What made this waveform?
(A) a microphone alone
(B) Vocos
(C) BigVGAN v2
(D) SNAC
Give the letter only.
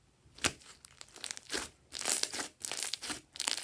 A